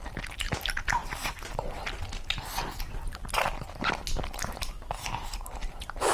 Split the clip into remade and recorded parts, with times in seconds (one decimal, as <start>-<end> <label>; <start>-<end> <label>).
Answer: 0.0-6.1 recorded